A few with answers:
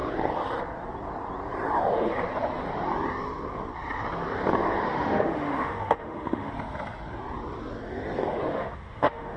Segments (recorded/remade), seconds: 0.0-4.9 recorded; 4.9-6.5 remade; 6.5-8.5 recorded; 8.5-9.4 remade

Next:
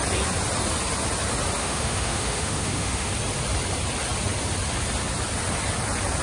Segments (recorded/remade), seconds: 0.0-1.6 recorded; 1.6-3.1 remade; 3.1-6.2 recorded